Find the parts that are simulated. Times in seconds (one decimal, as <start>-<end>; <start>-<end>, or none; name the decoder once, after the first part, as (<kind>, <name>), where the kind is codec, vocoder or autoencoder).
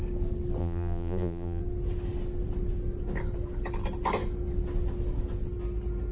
0.6-1.6 (vocoder, BigVGAN v2)